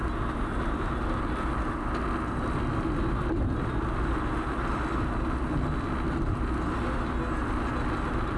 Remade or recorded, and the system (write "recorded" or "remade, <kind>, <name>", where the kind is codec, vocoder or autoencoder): recorded